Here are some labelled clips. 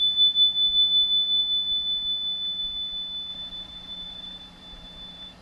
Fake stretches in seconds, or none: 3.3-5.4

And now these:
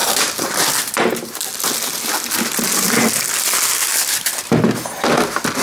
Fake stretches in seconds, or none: 3.8-4.3